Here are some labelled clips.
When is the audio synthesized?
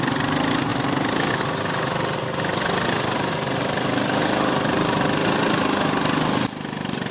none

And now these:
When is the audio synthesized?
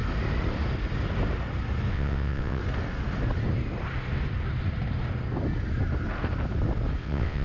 1.9-2.6; 7.0-7.4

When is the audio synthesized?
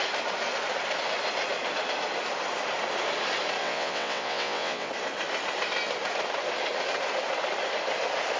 3.6-4.9